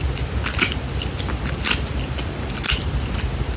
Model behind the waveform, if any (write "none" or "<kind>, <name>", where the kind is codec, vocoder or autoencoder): none